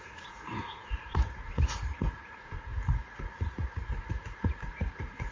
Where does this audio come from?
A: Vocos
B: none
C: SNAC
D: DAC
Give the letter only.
A